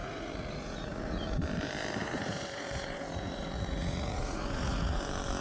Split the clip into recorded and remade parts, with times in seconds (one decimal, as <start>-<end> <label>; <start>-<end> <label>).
0.0-1.4 remade; 1.4-2.0 recorded; 2.0-5.0 remade; 5.0-5.4 recorded

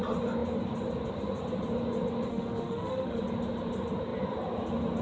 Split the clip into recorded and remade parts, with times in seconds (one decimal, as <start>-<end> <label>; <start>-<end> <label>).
0.0-2.3 recorded; 2.3-3.2 remade; 3.2-5.0 recorded

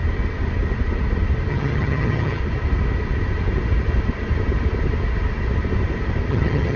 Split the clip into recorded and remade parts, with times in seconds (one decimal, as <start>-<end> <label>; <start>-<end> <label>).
0.0-1.5 recorded; 1.5-2.4 remade; 2.4-6.3 recorded; 6.3-6.8 remade

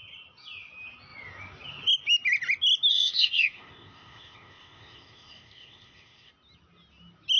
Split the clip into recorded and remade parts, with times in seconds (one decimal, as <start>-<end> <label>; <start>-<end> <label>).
0.0-2.9 recorded; 2.9-6.3 remade; 6.3-7.4 recorded

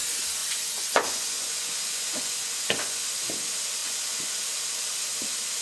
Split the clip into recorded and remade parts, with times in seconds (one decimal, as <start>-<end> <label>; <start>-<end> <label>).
0.0-0.4 recorded; 0.4-3.1 remade; 3.1-3.8 recorded; 3.8-4.4 remade; 4.4-5.6 recorded

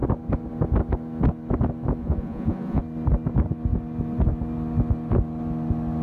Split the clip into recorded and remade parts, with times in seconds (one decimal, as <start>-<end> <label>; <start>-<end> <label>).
0.0-2.0 recorded; 2.0-2.8 remade; 2.8-6.0 recorded

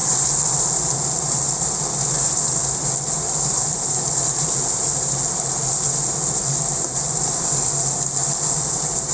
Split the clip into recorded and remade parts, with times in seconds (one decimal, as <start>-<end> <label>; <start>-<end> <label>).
0.0-9.1 recorded

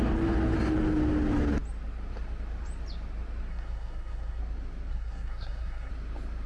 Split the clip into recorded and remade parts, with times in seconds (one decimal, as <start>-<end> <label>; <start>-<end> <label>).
0.0-3.5 recorded; 3.5-4.4 remade; 4.4-4.9 recorded; 4.9-5.9 remade; 5.9-6.5 recorded